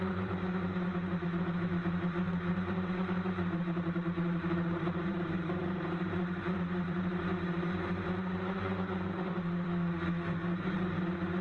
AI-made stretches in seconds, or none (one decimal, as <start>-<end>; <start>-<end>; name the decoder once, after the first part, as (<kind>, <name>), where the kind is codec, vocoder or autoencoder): 0.0-11.4 (vocoder, BigVGAN v2)